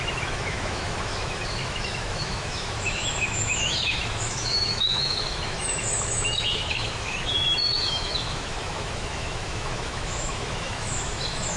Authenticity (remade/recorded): remade